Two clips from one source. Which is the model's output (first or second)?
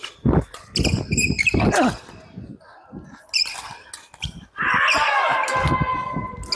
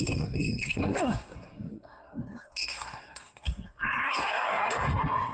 second